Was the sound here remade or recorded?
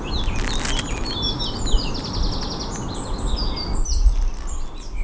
recorded